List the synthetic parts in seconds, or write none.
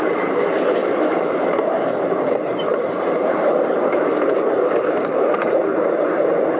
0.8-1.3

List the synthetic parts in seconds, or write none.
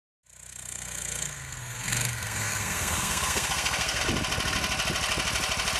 0.5-4.0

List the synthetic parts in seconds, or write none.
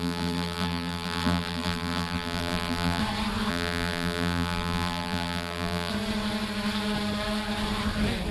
0.0-3.0; 3.5-5.9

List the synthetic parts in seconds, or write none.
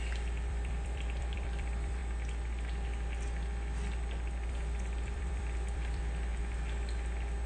0.0-2.0; 4.5-6.3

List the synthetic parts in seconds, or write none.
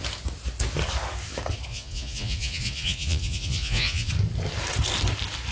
1.7-4.1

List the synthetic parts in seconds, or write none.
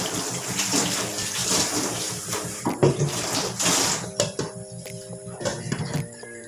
1.4-3.4; 5.5-6.5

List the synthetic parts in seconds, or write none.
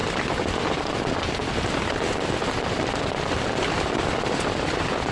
3.1-5.1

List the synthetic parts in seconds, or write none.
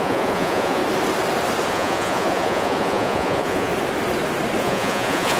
0.0-0.8; 1.7-3.7; 4.6-5.4